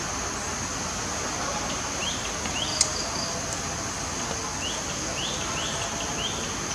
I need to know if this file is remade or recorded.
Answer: recorded